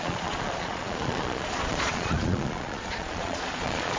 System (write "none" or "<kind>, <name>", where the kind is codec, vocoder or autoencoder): vocoder, Vocos